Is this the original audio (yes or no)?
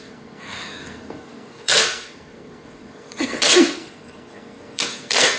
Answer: no